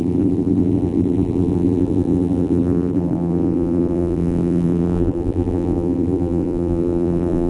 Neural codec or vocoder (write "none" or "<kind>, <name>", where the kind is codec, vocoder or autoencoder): vocoder, BigVGAN v2